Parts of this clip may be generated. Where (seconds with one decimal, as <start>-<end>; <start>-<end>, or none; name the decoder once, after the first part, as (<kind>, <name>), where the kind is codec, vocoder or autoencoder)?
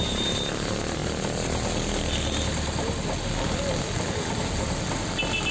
none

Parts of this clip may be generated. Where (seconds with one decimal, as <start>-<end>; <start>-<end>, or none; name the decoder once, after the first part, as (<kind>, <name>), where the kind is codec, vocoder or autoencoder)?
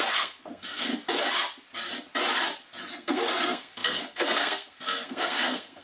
0.0-0.9 (codec, SNAC); 2.9-5.8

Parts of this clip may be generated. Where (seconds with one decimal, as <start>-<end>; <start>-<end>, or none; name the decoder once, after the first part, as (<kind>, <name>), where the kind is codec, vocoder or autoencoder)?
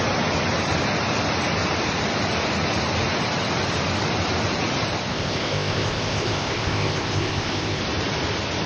5.1-7.8 (codec, ZipCodec)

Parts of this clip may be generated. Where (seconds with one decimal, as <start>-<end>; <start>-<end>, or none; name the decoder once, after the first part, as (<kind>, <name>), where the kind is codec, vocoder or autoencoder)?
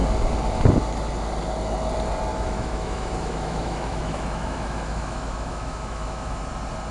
2.3-6.4 (autoencoder, DAC-VAE)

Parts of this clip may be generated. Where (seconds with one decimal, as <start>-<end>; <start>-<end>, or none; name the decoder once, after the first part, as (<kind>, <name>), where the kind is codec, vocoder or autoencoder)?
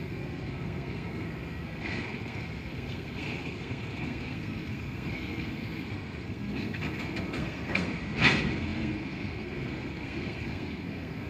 0.0-11.3 (codec, SNAC)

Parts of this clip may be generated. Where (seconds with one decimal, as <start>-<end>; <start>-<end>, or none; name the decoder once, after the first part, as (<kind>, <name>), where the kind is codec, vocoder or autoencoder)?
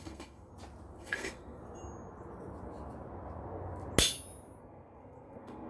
0.0-0.5 (codec, SNAC); 1.0-1.6; 4.6-5.7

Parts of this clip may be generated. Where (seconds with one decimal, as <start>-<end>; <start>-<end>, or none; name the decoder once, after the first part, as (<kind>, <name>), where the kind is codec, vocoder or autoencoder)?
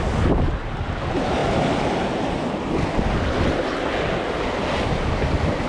none